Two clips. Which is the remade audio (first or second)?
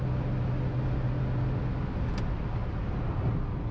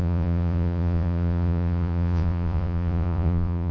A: second